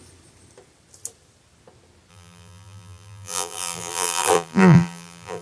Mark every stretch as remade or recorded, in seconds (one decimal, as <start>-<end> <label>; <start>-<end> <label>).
0.0-2.1 recorded; 2.1-5.4 remade